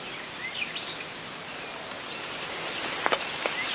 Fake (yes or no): no